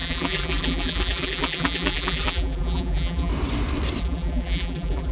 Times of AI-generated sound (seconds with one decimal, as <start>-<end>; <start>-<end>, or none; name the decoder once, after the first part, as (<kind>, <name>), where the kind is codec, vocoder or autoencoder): 0.0-3.3 (vocoder, BigVGAN v2); 4.0-5.1